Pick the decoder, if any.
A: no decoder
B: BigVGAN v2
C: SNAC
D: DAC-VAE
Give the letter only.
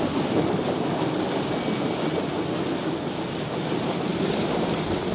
A